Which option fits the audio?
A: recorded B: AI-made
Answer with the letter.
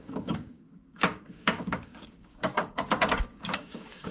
B